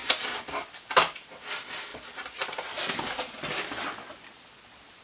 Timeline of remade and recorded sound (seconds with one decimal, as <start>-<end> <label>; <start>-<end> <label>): 0.0-0.7 remade; 0.7-1.9 recorded; 1.9-5.0 remade